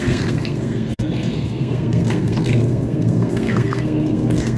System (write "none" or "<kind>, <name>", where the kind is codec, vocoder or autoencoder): codec, SNAC